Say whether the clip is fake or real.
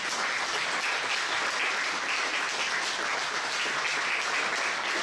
real